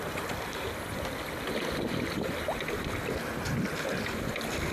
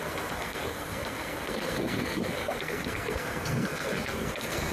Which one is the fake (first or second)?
second